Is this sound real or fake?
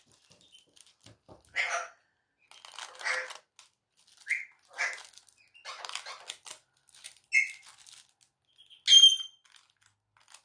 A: real